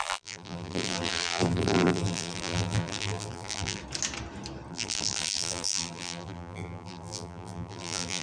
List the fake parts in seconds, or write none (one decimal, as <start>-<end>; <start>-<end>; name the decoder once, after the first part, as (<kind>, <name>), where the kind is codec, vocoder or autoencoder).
0.0-3.8 (vocoder, BigVGAN v2); 4.7-8.2